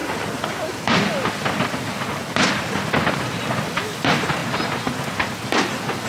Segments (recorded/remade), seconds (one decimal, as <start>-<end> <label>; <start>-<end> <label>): 0.0-4.4 recorded; 4.4-5.4 remade; 5.4-6.1 recorded